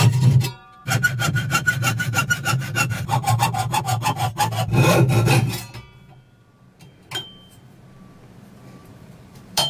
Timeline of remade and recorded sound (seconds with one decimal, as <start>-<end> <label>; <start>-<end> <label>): 0.0-0.8 recorded; 0.8-3.8 remade; 3.8-8.8 recorded; 8.8-9.7 remade